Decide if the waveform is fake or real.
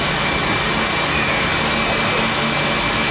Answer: real